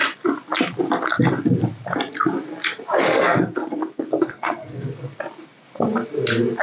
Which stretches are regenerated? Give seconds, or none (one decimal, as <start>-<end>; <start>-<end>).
3.1-5.2